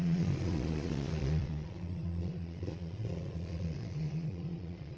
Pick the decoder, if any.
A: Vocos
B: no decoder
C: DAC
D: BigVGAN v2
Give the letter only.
A